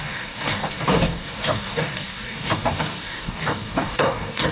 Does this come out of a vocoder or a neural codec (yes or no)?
yes